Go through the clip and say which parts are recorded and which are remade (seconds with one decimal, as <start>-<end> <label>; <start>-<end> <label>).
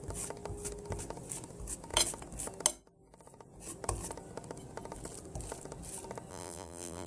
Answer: 0.0-6.3 recorded; 6.3-7.1 remade